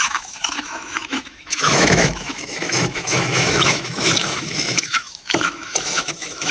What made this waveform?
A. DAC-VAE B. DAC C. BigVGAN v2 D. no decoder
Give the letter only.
A